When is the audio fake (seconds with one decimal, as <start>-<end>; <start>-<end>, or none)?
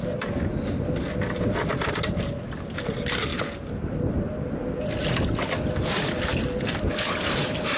none